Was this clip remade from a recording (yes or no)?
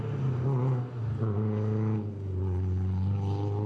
no